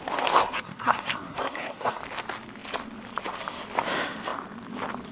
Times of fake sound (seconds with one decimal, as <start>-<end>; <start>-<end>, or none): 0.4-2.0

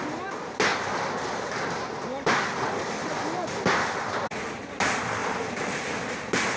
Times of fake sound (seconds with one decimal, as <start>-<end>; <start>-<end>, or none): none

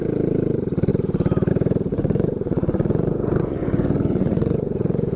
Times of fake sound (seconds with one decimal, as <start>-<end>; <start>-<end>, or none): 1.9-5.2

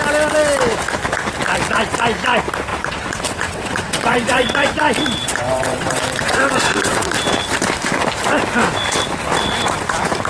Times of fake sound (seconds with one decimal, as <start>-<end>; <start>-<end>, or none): 2.7-4.7; 5.2-7.1

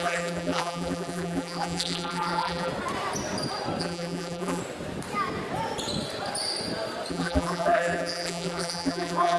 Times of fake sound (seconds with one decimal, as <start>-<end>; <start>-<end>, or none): 0.0-2.7; 3.8-4.6; 7.1-9.4

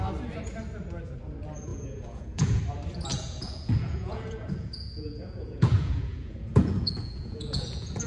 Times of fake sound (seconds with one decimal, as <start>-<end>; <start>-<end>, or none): 1.7-2.6; 3.1-8.1

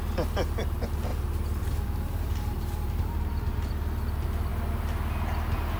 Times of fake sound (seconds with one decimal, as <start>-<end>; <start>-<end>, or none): 1.1-3.7

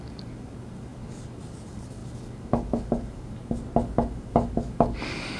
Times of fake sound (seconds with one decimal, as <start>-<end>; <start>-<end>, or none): 0.0-5.4